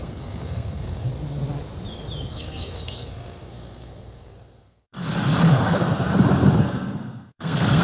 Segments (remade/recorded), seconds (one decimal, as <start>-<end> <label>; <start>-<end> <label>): 0.0-1.1 remade; 1.1-2.3 recorded; 2.3-5.0 remade; 5.0-5.5 recorded; 5.5-6.1 remade; 6.1-6.6 recorded; 6.6-7.8 remade